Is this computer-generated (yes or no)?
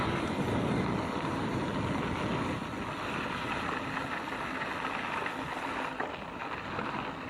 no